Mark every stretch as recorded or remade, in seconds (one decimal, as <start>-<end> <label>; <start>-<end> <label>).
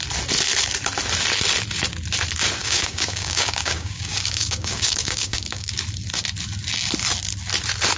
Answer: 0.0-2.6 recorded; 2.6-5.8 remade; 5.8-8.0 recorded